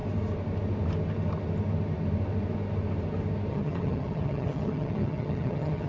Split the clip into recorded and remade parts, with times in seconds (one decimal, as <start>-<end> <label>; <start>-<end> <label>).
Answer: 0.0-3.5 recorded; 3.5-5.9 remade